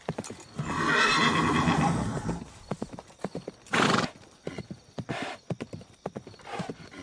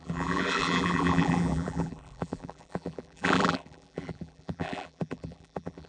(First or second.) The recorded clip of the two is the first